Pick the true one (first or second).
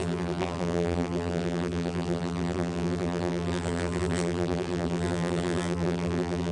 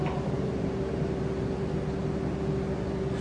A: second